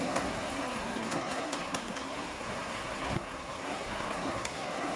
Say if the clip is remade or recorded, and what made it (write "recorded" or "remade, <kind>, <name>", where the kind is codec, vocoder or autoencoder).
remade, codec, SNAC